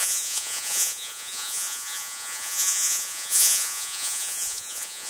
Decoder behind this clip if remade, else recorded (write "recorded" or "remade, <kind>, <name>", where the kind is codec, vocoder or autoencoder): remade, vocoder, Vocos